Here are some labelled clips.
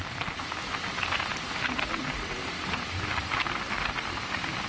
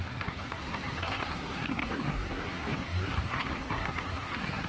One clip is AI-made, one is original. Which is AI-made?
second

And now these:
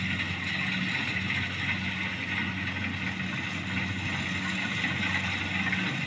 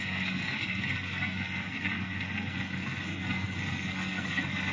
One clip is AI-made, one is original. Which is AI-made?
second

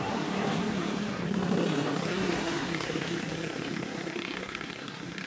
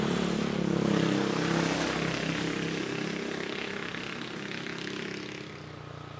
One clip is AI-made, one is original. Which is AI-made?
first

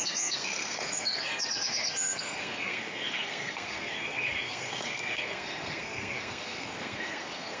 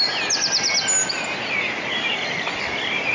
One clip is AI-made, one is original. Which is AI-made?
first